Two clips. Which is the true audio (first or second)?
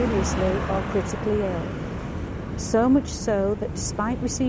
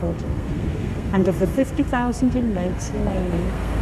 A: first